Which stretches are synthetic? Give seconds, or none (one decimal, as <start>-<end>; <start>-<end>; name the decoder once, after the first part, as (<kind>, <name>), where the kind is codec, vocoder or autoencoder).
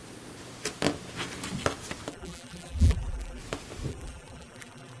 2.1-3.4 (vocoder, BigVGAN v2); 3.9-5.0